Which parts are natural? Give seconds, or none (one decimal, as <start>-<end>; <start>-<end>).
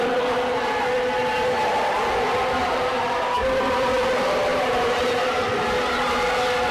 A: 0.0-2.6; 3.9-4.5; 5.4-6.7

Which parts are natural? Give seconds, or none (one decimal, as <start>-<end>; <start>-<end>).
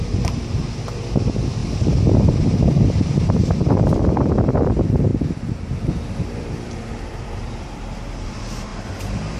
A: 1.6-2.3; 5.1-5.9; 8.7-9.4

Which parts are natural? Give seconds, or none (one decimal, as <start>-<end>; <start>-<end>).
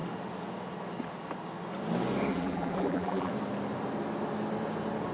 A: 0.0-2.3; 3.3-5.1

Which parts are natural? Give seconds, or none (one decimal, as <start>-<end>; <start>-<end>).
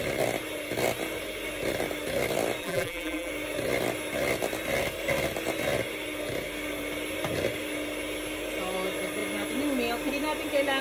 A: 0.0-2.6; 3.3-10.8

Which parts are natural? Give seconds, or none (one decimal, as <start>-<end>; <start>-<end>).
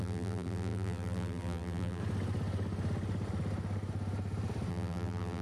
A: 2.0-4.7